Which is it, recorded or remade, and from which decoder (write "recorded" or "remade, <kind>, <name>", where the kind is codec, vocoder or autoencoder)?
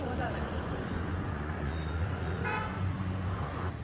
remade, vocoder, Vocos